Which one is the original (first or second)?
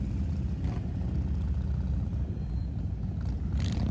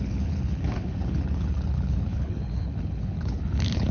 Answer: first